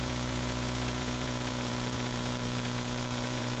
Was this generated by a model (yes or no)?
yes